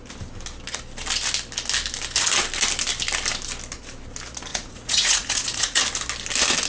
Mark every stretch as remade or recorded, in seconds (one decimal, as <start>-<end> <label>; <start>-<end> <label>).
0.0-4.5 recorded; 4.5-5.8 remade; 5.8-6.7 recorded